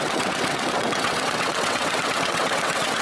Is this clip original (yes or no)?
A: no